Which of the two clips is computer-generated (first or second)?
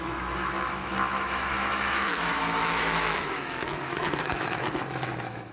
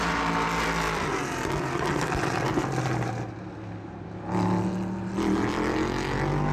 first